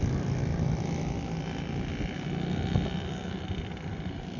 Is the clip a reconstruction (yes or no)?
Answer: no